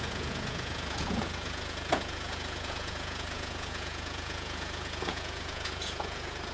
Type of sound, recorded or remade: remade